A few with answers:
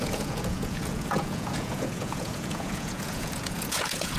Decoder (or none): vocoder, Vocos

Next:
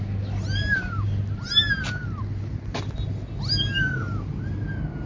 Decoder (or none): none